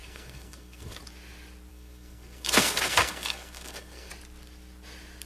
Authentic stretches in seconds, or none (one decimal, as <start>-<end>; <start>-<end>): 1.0-1.7; 4.1-5.3